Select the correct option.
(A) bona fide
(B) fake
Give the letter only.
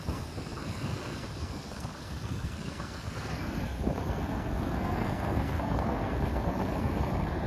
B